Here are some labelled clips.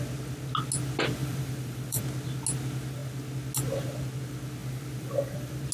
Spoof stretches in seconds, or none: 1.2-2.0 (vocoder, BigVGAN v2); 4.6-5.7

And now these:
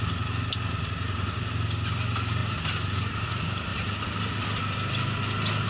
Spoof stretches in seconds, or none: 2.4-3.1 (vocoder, BigVGAN v2); 3.7-4.3

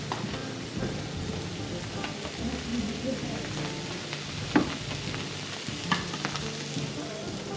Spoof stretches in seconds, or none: 0.4-1.8 (vocoder, BigVGAN v2); 2.7-3.6

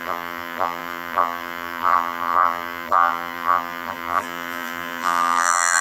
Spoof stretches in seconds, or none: 0.0-5.8 (vocoder, BigVGAN v2)

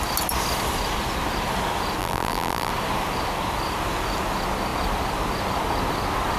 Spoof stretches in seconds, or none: 2.0-2.7 (vocoder, BigVGAN v2)

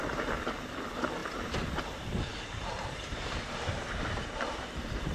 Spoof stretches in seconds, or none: 2.3-5.1 (vocoder, BigVGAN v2)

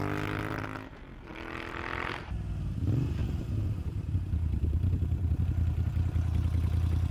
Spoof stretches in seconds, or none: 3.2-5.4 (vocoder, BigVGAN v2)